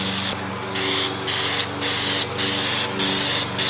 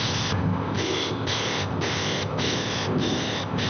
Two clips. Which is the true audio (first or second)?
first